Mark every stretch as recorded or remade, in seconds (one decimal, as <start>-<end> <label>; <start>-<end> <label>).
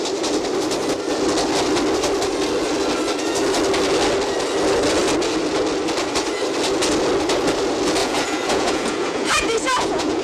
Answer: 0.0-8.0 recorded; 8.0-10.2 remade